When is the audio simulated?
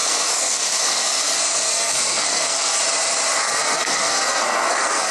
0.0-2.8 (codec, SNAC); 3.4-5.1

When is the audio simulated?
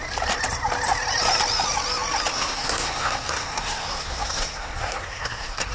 2.3-5.7 (codec, SNAC)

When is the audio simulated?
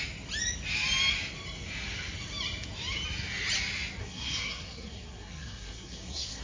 4.0-6.4 (codec, SNAC)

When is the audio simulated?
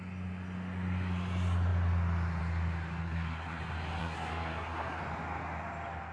3.0-3.6 (codec, SNAC); 4.0-5.0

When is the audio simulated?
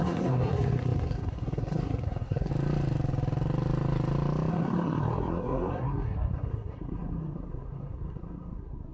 0.0-2.5 (codec, SNAC); 4.5-8.9